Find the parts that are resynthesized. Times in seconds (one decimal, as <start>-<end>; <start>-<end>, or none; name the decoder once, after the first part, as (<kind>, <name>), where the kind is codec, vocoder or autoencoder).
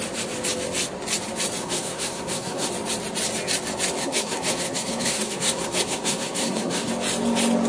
1.6-2.7 (codec, SNAC); 4.0-6.9